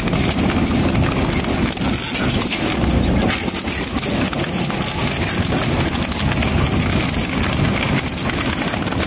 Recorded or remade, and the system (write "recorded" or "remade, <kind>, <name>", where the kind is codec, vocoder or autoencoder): recorded